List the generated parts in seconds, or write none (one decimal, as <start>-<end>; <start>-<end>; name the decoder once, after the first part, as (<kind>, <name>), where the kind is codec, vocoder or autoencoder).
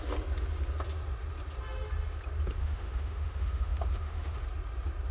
2.6-4.4 (autoencoder, DAC-VAE)